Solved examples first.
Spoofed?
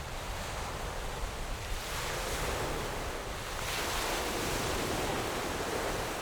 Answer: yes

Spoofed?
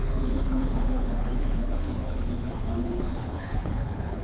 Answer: yes